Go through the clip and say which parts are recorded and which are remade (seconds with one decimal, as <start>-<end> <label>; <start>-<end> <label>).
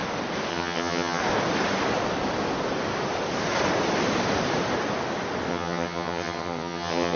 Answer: 0.0-0.5 recorded; 0.5-1.2 remade; 1.2-5.5 recorded; 5.5-7.2 remade